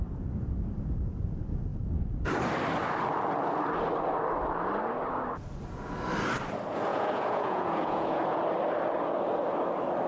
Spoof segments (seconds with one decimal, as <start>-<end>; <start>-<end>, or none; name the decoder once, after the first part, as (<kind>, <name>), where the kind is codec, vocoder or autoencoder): 6.9-8.4 (vocoder, Vocos)